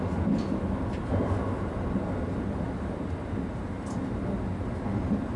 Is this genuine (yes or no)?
yes